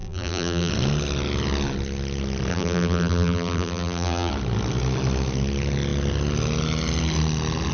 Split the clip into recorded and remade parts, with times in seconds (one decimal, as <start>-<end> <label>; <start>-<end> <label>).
0.0-0.7 remade; 0.7-2.5 recorded; 2.5-4.3 remade; 4.3-7.7 recorded